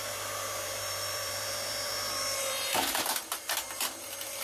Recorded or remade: remade